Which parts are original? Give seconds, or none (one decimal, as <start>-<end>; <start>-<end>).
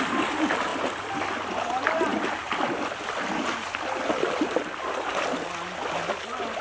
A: 0.0-6.6